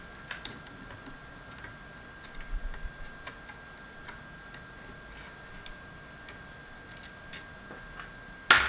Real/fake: real